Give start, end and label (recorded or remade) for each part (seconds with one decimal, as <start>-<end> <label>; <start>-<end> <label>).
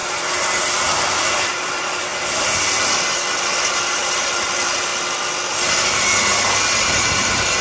0.0-0.6 recorded; 0.6-2.1 remade; 2.1-3.7 recorded; 3.7-4.9 remade; 4.9-6.9 recorded; 6.9-7.6 remade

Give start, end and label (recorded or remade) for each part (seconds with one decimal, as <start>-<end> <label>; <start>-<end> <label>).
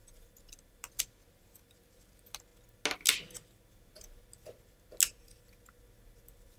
0.0-6.6 recorded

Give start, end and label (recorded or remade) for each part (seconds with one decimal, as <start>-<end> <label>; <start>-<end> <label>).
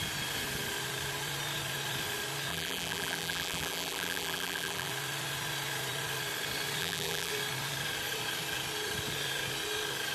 0.0-2.5 recorded; 2.5-4.9 remade; 4.9-6.8 recorded; 6.8-7.3 remade; 7.3-10.1 recorded